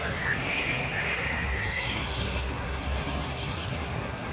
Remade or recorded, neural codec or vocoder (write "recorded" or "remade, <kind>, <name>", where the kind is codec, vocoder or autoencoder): remade, codec, SNAC